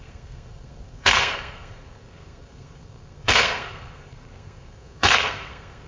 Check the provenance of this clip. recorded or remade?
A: remade